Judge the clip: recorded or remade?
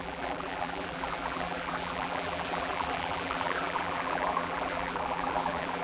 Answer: remade